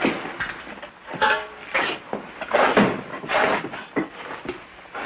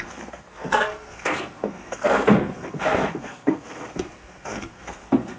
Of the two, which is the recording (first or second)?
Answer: first